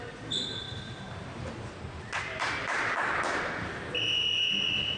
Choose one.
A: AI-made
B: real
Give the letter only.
B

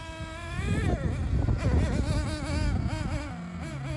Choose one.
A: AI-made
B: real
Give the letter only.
B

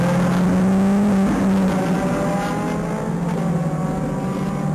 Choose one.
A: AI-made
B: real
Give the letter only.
B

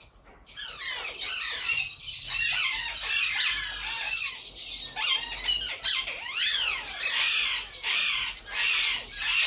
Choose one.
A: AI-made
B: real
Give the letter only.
B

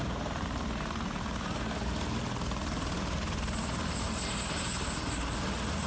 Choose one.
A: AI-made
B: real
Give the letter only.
B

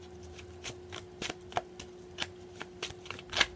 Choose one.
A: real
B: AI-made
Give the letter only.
A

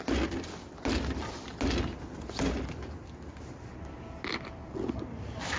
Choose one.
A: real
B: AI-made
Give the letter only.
A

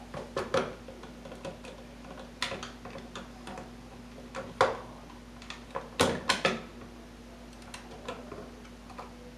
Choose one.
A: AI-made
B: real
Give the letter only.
B